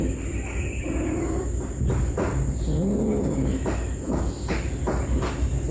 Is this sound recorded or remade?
recorded